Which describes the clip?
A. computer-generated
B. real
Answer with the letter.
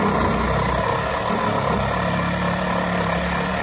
B